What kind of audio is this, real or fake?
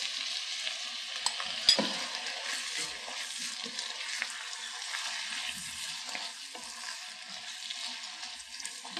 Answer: real